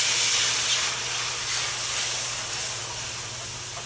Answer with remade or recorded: recorded